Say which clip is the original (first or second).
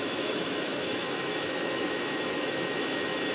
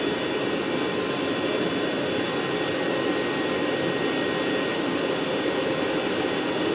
second